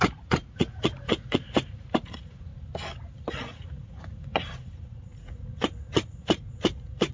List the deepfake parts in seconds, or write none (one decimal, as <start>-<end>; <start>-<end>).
0.0-2.5; 3.3-7.1